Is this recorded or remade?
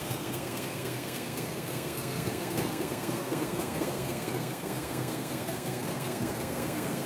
remade